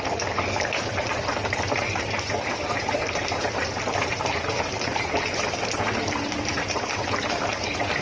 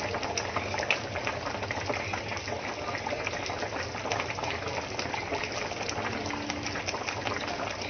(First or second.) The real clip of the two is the second